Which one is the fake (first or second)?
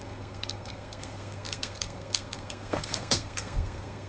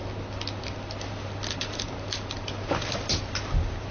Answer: first